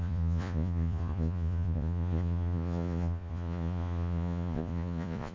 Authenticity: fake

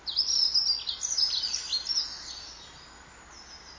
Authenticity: real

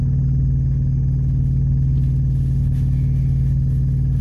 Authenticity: real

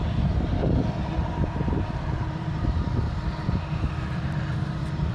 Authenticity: fake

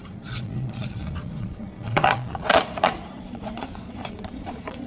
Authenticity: fake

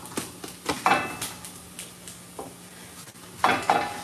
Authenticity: real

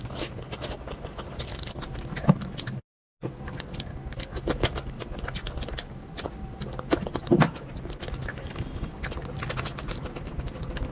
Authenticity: real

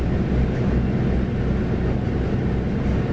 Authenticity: real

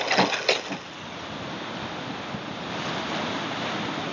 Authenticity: real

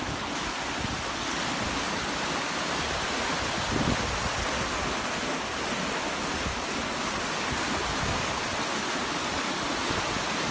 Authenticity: real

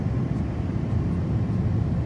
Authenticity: real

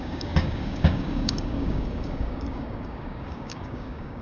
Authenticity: fake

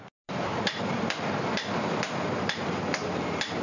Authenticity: fake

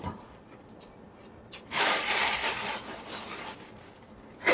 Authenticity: real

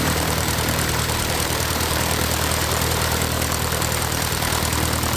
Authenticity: fake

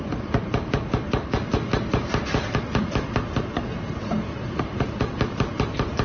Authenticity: real